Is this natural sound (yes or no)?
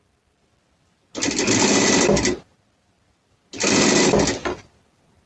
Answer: yes